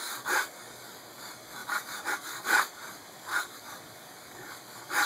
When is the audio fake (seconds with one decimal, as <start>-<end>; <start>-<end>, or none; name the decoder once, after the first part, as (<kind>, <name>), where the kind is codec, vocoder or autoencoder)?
0.0-5.1 (codec, DAC)